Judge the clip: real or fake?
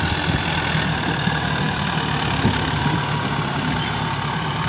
real